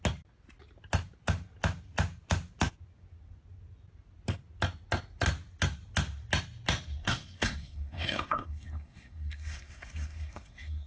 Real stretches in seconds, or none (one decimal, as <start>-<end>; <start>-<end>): 0.0-7.0

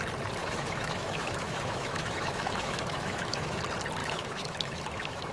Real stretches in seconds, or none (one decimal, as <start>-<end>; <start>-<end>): 0.0-0.4; 3.6-4.0

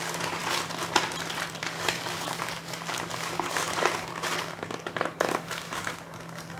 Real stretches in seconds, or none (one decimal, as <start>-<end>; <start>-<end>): 0.4-1.6

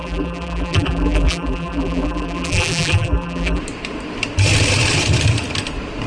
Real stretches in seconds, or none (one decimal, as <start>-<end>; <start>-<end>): 3.6-6.1

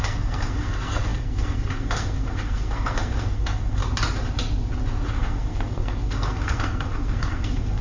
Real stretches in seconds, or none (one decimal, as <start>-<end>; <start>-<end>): 3.8-5.1